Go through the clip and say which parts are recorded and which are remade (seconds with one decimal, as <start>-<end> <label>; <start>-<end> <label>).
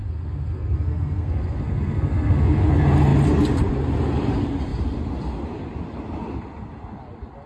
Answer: 0.0-2.7 remade; 2.7-7.5 recorded